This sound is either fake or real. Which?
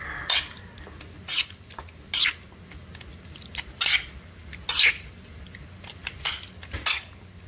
real